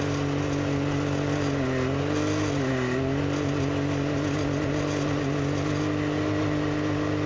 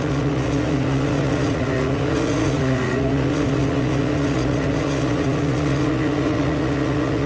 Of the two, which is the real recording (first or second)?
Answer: first